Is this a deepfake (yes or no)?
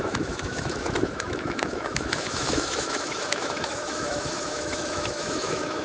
yes